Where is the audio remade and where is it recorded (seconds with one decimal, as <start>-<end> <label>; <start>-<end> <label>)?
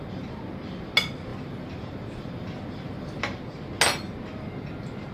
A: 0.0-1.3 recorded; 1.3-3.2 remade; 3.2-5.1 recorded